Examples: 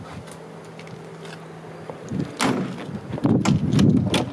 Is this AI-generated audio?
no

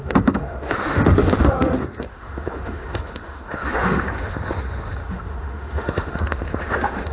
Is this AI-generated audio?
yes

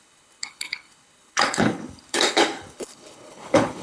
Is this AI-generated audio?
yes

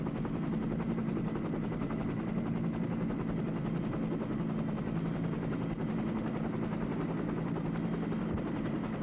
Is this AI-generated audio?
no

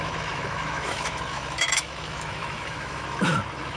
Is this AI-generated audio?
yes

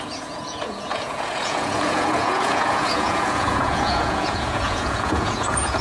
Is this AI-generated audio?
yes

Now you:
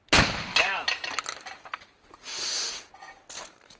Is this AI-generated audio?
no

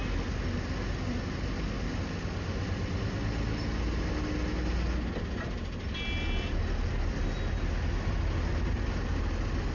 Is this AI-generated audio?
no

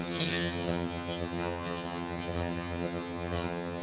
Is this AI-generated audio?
yes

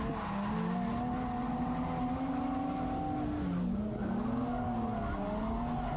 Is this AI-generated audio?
no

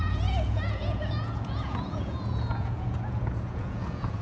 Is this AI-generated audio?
yes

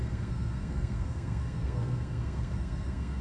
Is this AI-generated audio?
yes